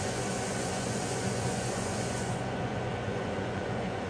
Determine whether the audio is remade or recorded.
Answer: remade